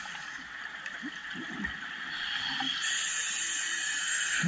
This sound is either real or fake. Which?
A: real